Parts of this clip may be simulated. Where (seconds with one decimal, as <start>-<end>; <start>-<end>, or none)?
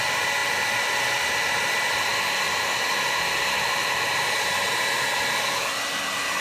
none